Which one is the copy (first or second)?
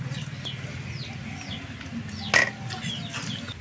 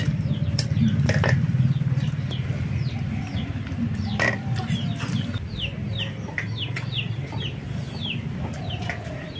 second